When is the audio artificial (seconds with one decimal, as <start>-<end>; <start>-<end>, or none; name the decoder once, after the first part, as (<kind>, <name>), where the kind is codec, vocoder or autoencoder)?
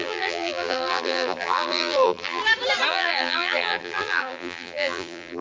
0.0-2.4 (vocoder, BigVGAN v2); 2.9-5.4